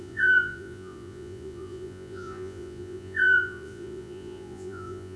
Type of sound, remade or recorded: remade